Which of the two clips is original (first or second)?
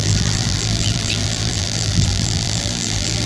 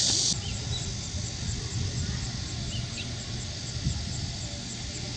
second